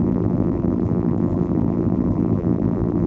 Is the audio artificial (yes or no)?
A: yes